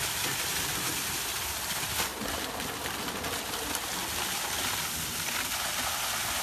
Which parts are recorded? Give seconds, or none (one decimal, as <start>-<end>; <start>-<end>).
0.0-6.4